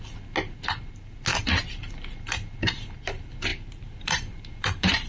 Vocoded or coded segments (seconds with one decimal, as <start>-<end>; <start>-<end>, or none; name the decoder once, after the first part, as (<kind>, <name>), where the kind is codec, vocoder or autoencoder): 1.3-1.9 (vocoder, BigVGAN v2); 3.5-5.1

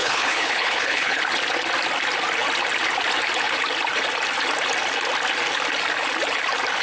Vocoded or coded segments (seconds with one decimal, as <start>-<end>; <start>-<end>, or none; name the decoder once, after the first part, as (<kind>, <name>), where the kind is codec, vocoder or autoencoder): 0.0-1.2 (codec, HILCodec)